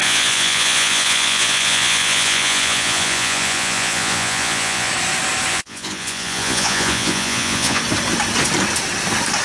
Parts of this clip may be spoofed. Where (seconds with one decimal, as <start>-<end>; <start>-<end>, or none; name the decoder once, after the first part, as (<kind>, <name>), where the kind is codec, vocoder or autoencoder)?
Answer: 0.0-4.9 (vocoder, Vocos); 5.5-7.8